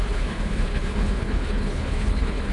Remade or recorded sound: remade